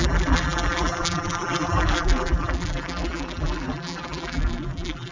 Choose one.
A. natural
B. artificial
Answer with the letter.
B